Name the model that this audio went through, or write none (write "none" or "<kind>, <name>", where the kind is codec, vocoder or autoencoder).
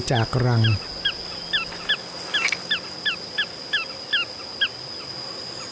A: none